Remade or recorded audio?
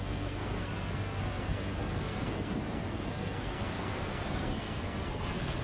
remade